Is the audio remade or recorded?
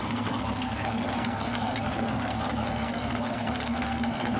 remade